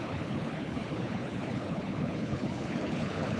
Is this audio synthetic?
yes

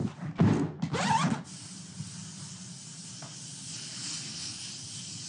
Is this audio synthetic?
no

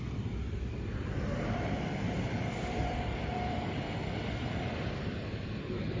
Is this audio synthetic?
yes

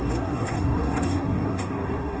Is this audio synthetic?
yes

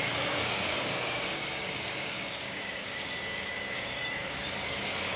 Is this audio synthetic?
yes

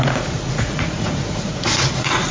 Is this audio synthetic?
yes